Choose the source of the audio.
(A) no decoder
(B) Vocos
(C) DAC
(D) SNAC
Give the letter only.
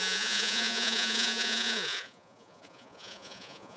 B